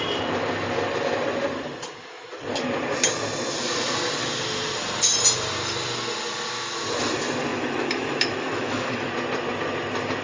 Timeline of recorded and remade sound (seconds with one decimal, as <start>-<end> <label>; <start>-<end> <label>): 0.0-7.5 recorded; 7.5-9.1 remade; 9.1-10.2 recorded